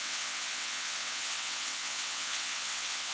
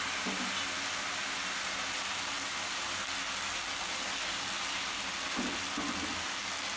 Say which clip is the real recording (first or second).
second